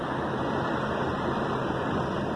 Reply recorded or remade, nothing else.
recorded